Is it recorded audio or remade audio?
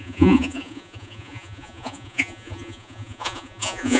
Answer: remade